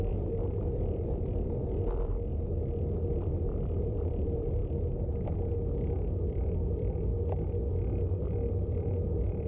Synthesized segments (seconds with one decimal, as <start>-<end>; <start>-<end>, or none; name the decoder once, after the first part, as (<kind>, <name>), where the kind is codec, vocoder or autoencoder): 0.0-2.3 (vocoder, BigVGAN v2); 3.1-4.6; 6.3-7.1; 7.7-9.5